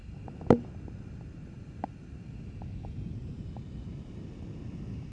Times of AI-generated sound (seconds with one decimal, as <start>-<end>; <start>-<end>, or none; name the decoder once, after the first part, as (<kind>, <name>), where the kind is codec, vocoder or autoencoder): none